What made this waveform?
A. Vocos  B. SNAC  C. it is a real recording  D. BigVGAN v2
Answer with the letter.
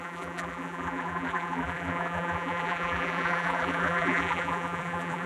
D